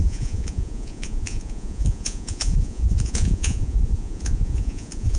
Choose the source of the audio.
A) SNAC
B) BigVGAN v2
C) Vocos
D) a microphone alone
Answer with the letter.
C